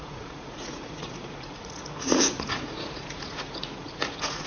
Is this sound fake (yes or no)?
yes